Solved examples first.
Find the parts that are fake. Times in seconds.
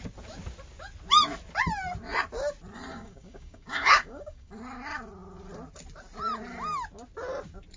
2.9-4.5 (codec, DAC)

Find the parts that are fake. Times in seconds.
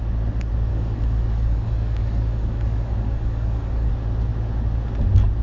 0.7-3.9 (codec, DAC)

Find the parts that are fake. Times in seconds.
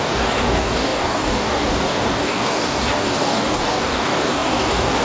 0.0-5.0 (codec, DAC)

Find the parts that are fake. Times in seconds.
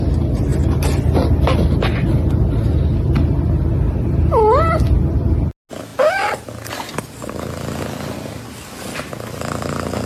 none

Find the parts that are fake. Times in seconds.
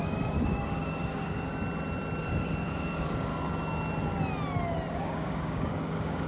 0.0-1.5 (codec, DAC); 2.2-3.3; 4.9-6.3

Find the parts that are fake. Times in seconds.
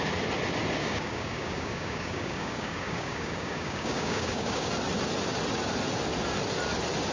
0.8-4.7 (codec, DAC)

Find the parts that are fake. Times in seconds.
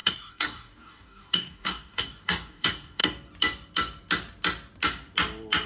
0.0-3.0 (codec, DAC)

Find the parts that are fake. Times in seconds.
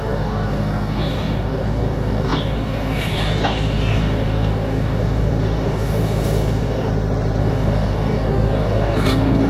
0.0-6.9 (codec, DAC); 7.4-9.5